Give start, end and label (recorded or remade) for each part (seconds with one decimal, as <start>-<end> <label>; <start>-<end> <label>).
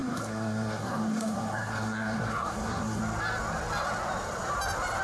0.0-3.0 remade; 3.0-5.0 recorded